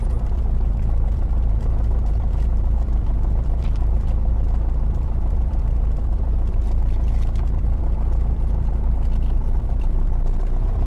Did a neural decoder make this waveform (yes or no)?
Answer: yes